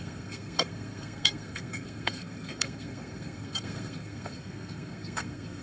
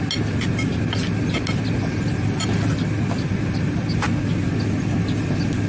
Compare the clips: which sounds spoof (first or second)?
first